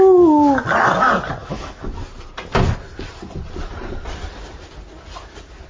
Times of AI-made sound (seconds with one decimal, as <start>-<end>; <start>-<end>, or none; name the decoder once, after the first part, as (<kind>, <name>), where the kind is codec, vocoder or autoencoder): 1.4-1.9 (autoencoder, DAC-VAE)